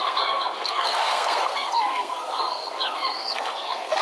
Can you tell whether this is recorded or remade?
remade